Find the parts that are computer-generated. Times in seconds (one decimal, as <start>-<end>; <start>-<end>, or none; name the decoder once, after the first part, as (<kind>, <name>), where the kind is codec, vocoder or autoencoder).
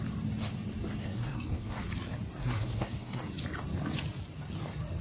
1.0-1.8 (codec, SNAC); 2.4-3.2